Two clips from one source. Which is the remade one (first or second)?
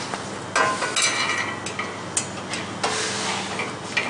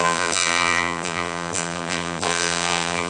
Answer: second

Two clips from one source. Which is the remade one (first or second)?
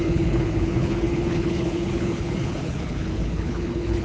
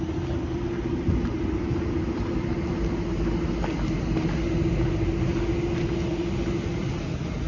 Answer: first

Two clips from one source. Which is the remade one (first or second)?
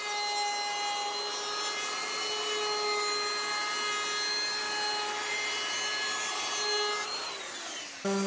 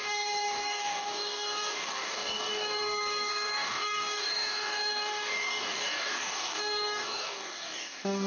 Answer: second